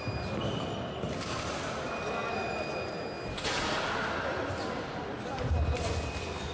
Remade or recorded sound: recorded